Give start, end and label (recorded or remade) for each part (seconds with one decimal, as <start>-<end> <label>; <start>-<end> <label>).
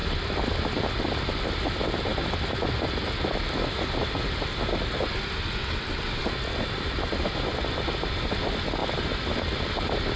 0.0-5.6 recorded; 5.6-6.2 remade; 6.2-10.2 recorded